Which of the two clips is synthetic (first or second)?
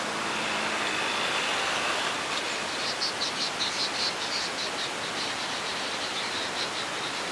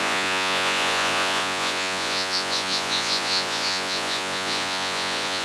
second